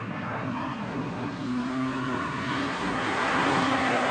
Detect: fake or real fake